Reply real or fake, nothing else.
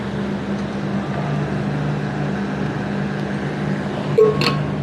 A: real